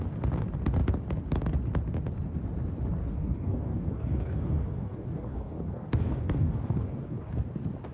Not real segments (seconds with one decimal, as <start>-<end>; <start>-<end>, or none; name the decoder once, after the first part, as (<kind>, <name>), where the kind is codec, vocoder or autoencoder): 3.0-7.3 (codec, DAC)